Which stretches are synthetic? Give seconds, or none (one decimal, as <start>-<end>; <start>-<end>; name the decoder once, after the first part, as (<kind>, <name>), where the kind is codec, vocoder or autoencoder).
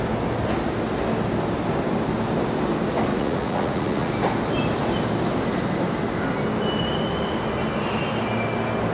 3.1-4.1 (vocoder, Vocos)